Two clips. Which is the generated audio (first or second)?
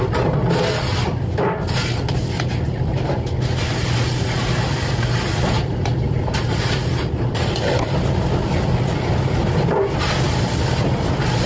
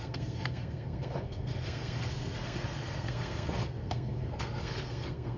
second